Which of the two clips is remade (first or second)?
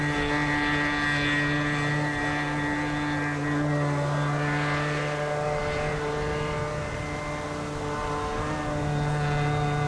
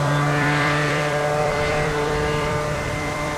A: second